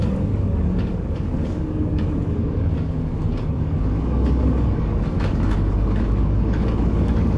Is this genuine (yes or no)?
no